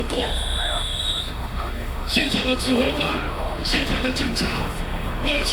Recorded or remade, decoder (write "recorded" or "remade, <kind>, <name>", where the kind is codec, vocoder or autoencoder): remade, autoencoder, DAC-VAE